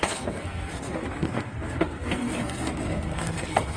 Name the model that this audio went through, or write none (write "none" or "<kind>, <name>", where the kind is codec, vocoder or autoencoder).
codec, SNAC